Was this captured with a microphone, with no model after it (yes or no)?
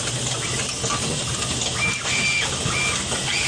yes